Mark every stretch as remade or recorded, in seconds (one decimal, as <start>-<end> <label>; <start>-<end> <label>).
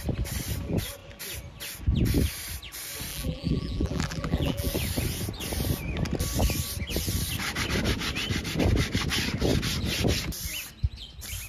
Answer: 0.0-3.1 recorded; 3.1-4.7 remade; 4.7-11.5 recorded